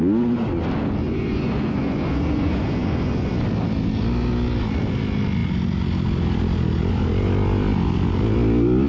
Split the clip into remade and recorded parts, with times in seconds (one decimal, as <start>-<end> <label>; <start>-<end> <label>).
0.0-1.0 recorded; 1.0-3.3 remade; 3.3-8.9 recorded